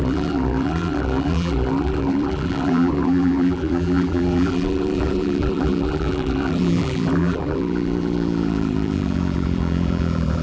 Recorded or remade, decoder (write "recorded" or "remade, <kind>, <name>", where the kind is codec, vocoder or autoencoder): remade, vocoder, BigVGAN v2